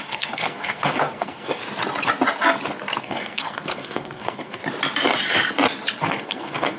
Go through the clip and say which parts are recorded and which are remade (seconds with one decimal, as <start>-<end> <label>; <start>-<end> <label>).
0.0-1.6 remade; 1.6-3.0 recorded; 3.0-4.6 remade; 4.6-6.0 recorded; 6.0-6.8 remade